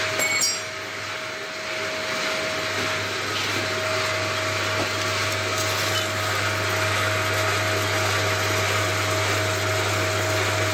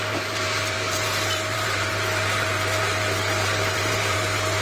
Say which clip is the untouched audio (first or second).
first